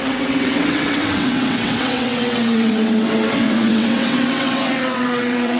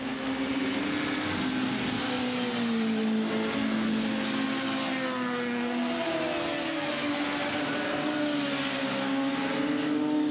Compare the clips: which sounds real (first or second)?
second